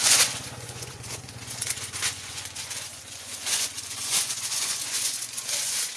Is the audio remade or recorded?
remade